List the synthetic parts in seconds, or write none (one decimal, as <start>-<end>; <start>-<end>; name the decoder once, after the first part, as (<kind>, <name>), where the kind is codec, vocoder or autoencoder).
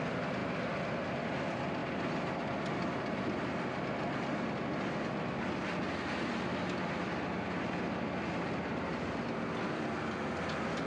none